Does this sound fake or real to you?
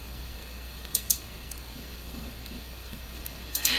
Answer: fake